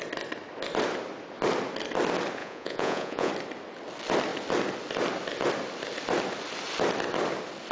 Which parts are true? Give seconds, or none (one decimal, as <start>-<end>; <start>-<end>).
0.0-2.4; 3.3-7.7